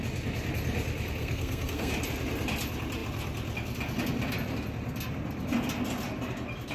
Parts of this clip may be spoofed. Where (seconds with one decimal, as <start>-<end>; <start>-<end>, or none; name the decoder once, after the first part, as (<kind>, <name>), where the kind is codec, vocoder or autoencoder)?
1.2-1.9 (codec, SNAC)